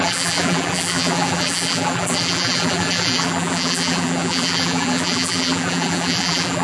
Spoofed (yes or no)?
yes